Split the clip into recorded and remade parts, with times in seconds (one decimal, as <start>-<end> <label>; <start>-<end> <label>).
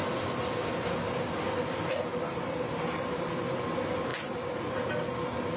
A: 0.0-2.1 recorded; 2.1-3.1 remade; 3.1-5.6 recorded